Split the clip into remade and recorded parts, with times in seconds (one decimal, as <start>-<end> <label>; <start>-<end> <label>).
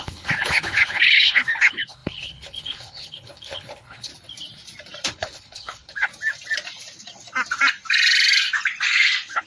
0.0-4.1 remade; 4.1-5.1 recorded; 5.1-6.1 remade; 6.1-8.8 recorded; 8.8-9.5 remade